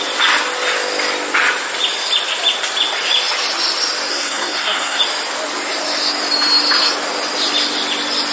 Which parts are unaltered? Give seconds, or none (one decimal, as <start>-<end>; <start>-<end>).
0.0-4.1; 5.0-8.3